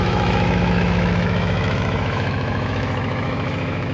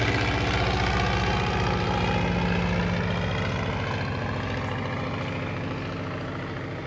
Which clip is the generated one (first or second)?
first